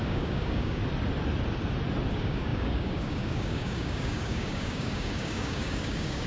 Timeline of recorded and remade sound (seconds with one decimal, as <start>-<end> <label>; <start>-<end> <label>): 0.0-0.8 remade; 0.8-2.1 recorded; 2.1-6.3 remade